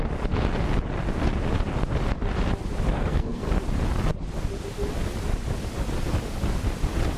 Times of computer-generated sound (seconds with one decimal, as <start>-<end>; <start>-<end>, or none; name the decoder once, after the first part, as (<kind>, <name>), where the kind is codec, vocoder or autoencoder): 2.9-3.5 (codec, SNAC)